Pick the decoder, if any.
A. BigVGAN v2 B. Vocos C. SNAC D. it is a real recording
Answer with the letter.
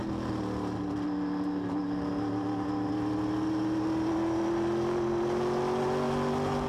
D